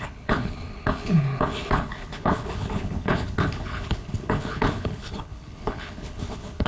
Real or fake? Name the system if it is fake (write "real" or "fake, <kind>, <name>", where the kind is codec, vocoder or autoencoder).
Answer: fake, codec, HILCodec